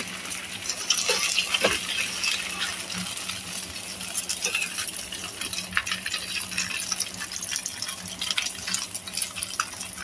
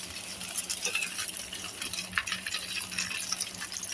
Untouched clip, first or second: first